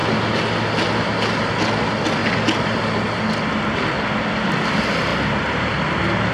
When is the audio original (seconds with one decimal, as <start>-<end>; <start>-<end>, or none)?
0.0-6.3